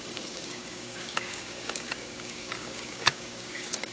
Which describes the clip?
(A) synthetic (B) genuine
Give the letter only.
A